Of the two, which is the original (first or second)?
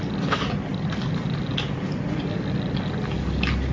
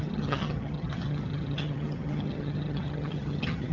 first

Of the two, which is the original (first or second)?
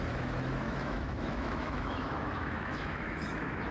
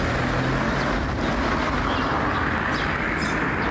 second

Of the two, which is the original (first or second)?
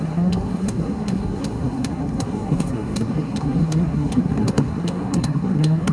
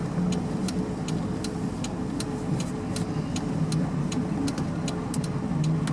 second